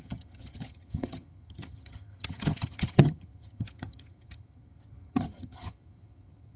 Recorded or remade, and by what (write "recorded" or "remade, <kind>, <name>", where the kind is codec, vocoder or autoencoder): remade, vocoder, HiFi-GAN